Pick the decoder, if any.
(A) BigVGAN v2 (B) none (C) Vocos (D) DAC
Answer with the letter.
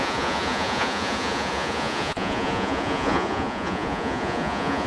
C